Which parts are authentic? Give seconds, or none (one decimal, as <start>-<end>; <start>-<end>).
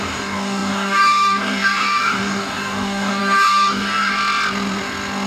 4.1-5.3